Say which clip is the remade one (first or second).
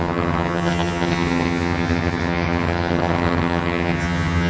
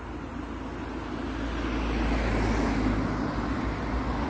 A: first